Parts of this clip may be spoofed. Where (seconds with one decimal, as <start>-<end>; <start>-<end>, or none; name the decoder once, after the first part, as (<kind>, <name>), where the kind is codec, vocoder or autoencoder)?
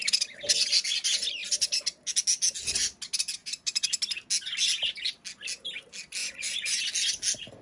3.4-4.0 (vocoder, Vocos); 6.2-6.8